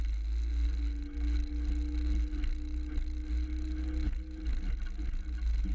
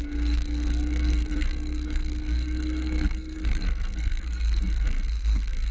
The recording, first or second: first